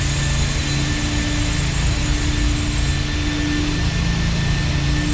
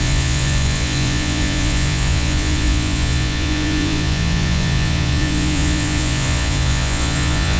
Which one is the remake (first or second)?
second